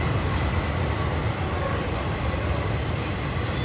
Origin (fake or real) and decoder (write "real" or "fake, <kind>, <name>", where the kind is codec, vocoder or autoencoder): real